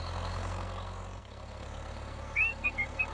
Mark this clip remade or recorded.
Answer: remade